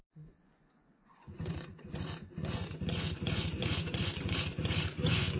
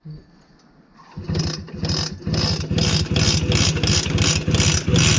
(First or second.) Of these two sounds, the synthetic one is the first